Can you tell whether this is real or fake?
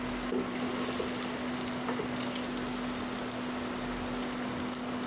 real